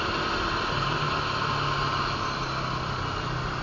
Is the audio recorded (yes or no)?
yes